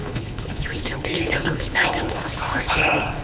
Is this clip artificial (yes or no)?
yes